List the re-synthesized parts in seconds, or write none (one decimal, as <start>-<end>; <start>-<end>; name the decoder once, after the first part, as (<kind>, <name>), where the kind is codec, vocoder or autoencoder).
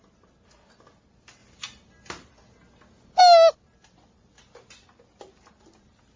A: none